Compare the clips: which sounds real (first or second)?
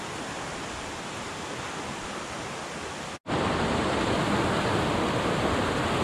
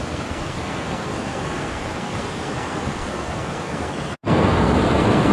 first